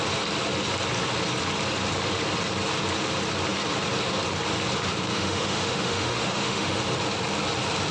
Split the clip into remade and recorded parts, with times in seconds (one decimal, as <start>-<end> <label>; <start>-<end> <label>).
0.0-5.1 recorded; 5.1-6.8 remade; 6.8-7.9 recorded